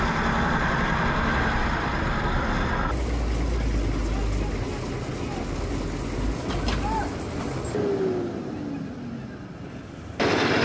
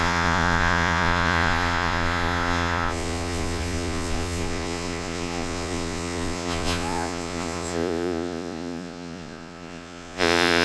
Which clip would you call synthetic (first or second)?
second